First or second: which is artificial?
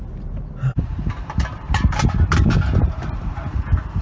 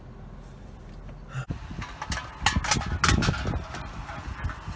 first